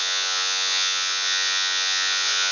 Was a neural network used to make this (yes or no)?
yes